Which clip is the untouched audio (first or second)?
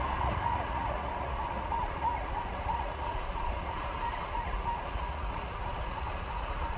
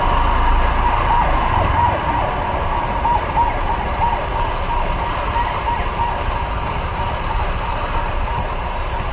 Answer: second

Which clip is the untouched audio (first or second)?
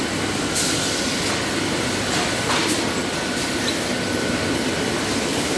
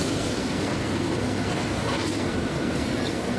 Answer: first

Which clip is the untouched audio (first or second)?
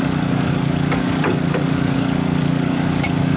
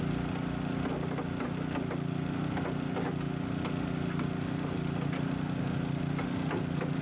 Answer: second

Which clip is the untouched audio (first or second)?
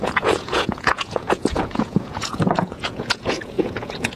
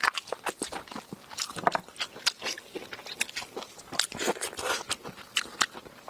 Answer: second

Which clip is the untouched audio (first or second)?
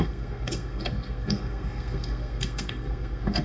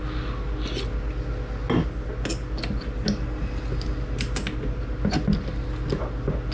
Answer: second